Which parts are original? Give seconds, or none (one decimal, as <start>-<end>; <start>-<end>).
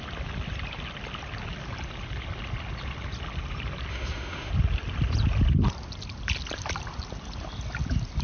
0.0-3.9; 4.5-8.2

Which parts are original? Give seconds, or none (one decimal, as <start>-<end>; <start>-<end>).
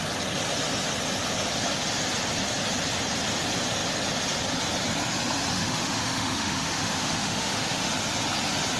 0.0-5.5; 7.9-8.8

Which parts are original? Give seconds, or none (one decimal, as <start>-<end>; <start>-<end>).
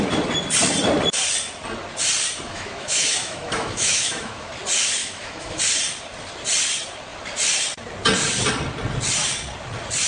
0.0-2.5; 4.5-5.0; 5.6-10.1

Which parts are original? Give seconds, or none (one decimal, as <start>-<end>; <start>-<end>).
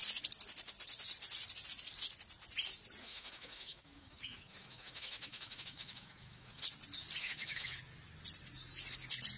0.0-3.0; 6.6-7.2; 7.8-9.4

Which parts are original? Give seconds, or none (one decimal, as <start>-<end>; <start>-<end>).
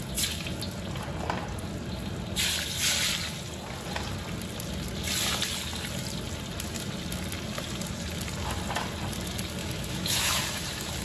0.0-9.6; 10.4-11.0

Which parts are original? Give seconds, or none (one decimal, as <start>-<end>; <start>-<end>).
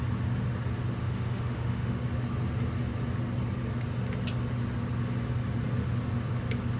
0.0-1.0; 2.0-6.8